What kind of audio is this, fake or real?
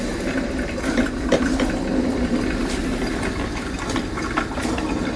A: real